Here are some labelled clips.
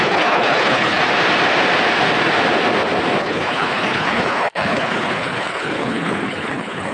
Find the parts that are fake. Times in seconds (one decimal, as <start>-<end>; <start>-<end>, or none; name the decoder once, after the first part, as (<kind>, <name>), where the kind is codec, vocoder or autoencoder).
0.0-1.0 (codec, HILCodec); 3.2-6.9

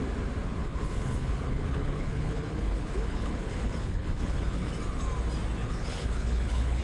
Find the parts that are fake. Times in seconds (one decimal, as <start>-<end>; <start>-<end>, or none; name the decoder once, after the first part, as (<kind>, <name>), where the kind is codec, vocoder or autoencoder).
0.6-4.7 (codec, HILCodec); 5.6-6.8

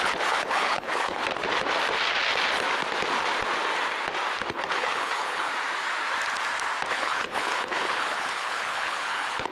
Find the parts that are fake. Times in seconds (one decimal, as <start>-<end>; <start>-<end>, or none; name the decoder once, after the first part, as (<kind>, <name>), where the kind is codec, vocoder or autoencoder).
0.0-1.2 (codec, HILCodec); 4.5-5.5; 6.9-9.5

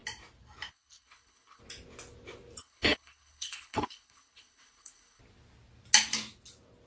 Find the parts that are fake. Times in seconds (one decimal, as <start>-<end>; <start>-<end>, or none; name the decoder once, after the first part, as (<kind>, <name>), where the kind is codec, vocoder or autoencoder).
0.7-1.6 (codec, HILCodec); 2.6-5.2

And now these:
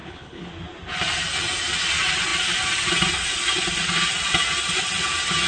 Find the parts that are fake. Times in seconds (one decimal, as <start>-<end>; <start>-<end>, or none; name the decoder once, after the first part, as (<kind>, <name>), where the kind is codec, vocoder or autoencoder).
0.0-0.5 (codec, HILCodec)

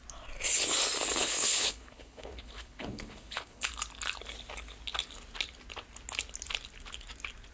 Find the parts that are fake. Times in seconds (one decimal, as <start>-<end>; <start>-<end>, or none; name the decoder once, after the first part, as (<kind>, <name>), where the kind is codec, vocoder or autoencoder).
1.2-3.7 (codec, HILCodec)

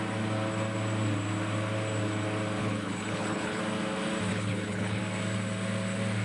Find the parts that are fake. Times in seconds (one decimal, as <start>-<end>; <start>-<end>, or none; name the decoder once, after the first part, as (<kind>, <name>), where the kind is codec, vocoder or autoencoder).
2.6-3.6 (codec, HILCodec); 4.3-5.0